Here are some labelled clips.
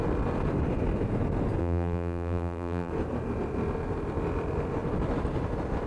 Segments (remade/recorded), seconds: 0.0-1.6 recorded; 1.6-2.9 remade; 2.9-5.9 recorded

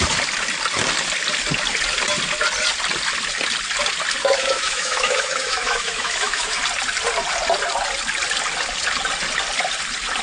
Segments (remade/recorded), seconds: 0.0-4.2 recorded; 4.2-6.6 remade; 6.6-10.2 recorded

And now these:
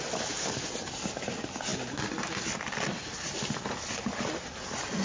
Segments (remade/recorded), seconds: 0.0-5.0 recorded

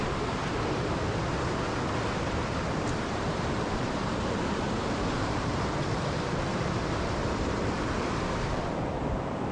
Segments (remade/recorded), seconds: 0.0-0.4 remade; 0.4-3.1 recorded; 3.1-9.5 remade

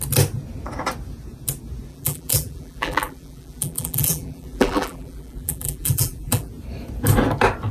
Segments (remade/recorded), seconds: 0.0-1.9 recorded; 1.9-6.5 remade; 6.5-7.7 recorded